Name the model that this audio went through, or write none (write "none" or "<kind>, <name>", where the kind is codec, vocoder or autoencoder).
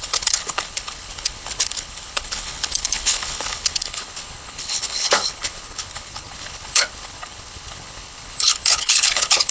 codec, HILCodec